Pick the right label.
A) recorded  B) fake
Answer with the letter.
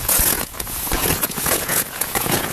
B